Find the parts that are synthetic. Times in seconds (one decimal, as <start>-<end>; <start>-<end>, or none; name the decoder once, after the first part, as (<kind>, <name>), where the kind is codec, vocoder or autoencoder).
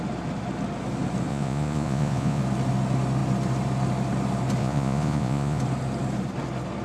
1.3-2.4 (vocoder, Vocos); 4.6-5.6